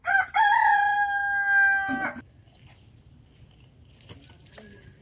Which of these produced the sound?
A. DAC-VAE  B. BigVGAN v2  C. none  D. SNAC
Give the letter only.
C